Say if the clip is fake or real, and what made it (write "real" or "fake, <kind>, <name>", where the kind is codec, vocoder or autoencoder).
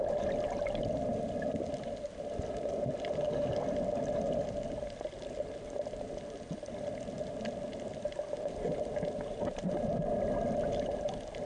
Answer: real